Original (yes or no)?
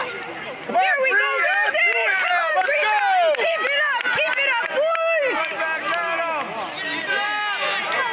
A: yes